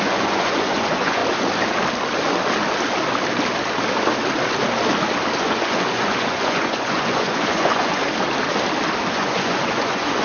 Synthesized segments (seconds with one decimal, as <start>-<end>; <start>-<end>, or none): 0.0-1.2; 5.4-8.0; 9.1-10.2